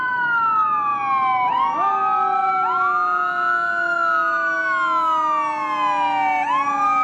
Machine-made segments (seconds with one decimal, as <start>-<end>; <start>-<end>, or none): none